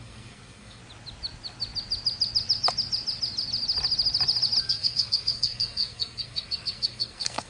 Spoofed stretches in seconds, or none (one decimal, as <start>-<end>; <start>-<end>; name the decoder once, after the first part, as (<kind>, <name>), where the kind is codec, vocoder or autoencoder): 0.0-0.8 (codec, SNAC); 4.6-7.5